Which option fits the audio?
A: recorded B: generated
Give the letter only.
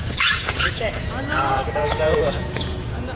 B